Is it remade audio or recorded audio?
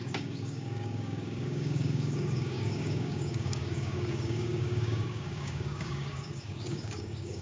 remade